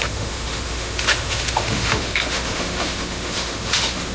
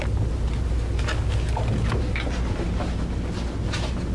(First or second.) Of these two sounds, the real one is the second